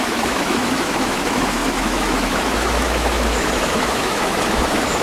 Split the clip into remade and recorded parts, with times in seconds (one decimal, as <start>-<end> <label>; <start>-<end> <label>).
0.0-5.0 remade